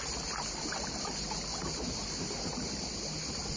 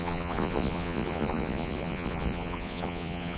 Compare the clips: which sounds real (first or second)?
first